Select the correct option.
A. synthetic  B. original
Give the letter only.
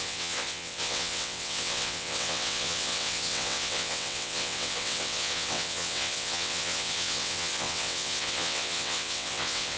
A